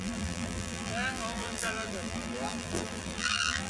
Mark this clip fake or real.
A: fake